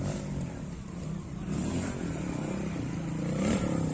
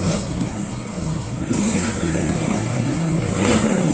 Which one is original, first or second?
first